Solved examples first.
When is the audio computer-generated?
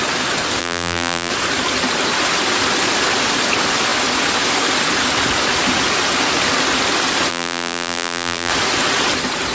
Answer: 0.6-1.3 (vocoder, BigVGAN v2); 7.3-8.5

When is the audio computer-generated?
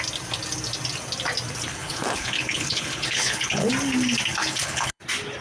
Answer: 1.7-3.7 (codec, HILCodec); 4.3-5.0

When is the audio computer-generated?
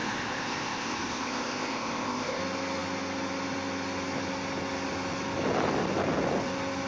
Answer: 0.0-2.4 (codec, ZipCodec)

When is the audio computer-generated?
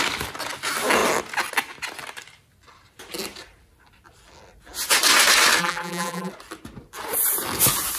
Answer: 5.6-6.3 (vocoder, BigVGAN v2)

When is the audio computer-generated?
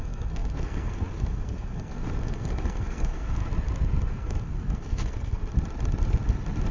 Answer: 0.0-3.4 (codec, SNAC); 4.1-5.4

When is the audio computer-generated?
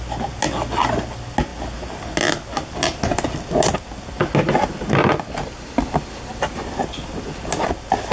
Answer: none